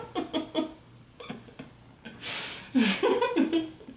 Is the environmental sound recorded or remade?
recorded